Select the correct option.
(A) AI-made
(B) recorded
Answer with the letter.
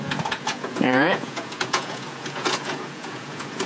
A